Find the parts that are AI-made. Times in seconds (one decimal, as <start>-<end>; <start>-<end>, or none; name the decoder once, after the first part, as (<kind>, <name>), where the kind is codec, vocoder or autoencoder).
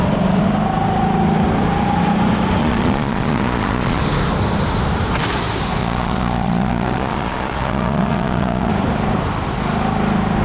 2.6-4.0 (vocoder, Vocos); 5.8-8.7